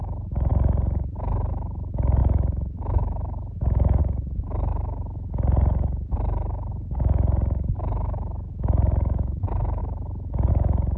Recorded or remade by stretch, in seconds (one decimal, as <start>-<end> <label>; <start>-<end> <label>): 0.0-0.5 remade; 0.5-1.5 recorded; 1.5-4.7 remade; 4.7-6.7 recorded; 6.7-9.8 remade; 9.8-10.5 recorded; 10.5-11.0 remade

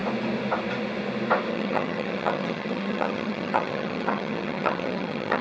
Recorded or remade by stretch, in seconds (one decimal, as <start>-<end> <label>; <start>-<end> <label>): 0.0-1.5 recorded; 1.5-5.4 remade